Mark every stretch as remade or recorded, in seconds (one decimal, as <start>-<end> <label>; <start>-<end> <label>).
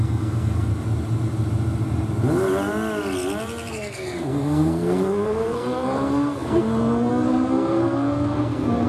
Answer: 0.0-0.7 remade; 0.7-3.7 recorded; 3.7-8.9 remade